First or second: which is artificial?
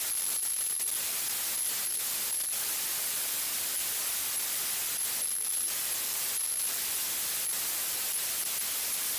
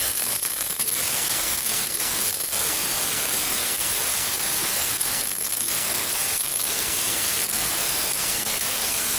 second